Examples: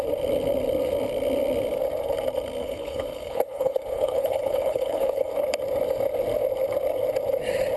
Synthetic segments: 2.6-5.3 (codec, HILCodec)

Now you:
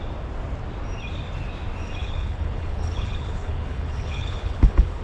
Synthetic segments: 2.0-5.0 (codec, HILCodec)

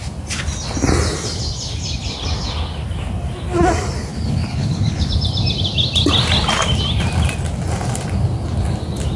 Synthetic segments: 4.1-5.1 (codec, HILCodec)

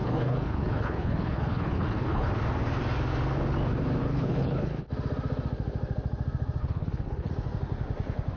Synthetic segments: 0.0-2.3 (codec, HILCodec); 4.0-4.8; 6.6-7.3

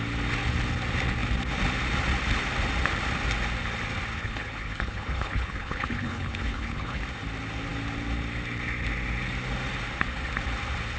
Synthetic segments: 4.2-7.0 (codec, HILCodec)